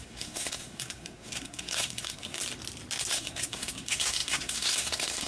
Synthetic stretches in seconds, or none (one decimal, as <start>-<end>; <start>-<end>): 0.0-2.4; 3.1-5.3

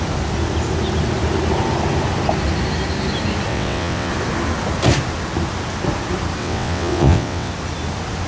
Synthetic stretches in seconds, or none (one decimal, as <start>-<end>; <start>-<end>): 3.5-4.1; 6.4-7.5

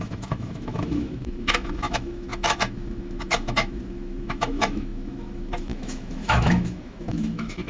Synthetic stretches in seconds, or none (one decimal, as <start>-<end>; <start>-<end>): 0.0-7.7

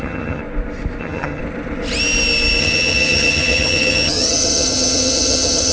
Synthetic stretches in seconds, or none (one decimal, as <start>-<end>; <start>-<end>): 0.0-0.4; 1.0-1.4; 2.6-5.7

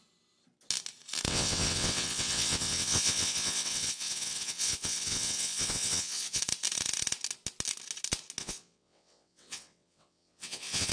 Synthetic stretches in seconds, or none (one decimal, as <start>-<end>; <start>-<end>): 1.3-6.4; 8.4-10.9

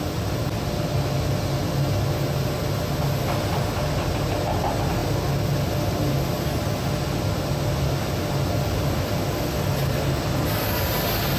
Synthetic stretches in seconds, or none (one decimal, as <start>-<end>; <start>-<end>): none

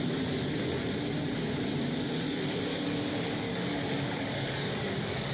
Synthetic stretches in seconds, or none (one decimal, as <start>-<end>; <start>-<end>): 2.7-5.3